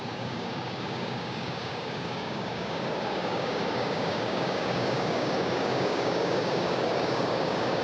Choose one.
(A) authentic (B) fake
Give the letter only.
B